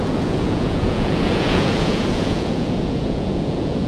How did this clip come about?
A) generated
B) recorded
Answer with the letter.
A